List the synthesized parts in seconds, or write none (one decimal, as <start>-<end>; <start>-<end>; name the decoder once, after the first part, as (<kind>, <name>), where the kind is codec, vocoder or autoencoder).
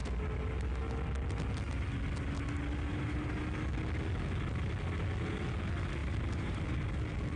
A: 2.9-3.4 (vocoder, BigVGAN v2); 6.0-6.6